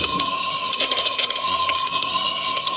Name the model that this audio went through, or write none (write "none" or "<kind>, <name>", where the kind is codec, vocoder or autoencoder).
codec, SNAC